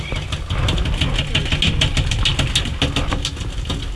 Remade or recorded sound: recorded